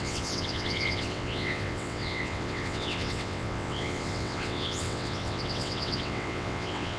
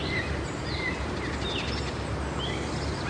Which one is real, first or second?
second